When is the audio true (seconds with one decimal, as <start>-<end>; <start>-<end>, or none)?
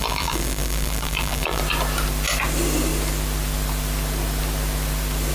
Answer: 1.6-5.3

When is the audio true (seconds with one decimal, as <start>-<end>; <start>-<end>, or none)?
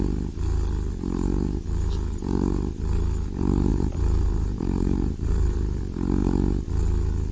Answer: 0.0-3.7; 5.8-7.3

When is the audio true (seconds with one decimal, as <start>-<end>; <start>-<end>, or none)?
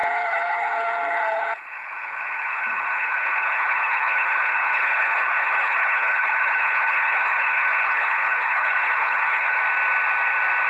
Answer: 9.6-10.7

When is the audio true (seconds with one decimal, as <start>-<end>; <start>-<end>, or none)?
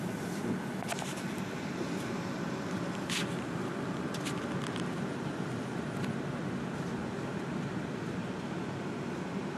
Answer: 0.0-8.2; 8.7-9.6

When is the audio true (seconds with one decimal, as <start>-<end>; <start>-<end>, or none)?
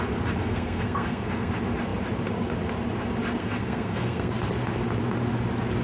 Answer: 0.0-0.4; 1.5-3.4; 4.3-5.8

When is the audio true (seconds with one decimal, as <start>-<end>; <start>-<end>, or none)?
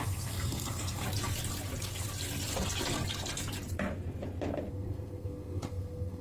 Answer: 1.0-4.7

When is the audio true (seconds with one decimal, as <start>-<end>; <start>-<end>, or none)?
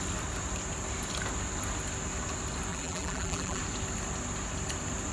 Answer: 0.0-2.7; 3.6-5.1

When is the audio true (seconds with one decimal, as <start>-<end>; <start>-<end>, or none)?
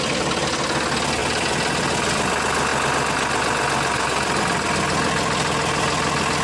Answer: 0.0-6.4